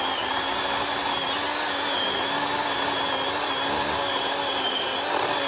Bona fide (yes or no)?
yes